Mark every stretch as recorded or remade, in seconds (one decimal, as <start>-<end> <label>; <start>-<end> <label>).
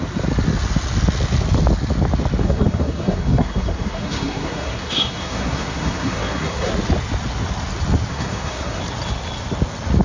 0.0-2.4 recorded; 2.4-6.7 remade; 6.7-8.1 recorded; 8.1-8.8 remade; 8.8-10.0 recorded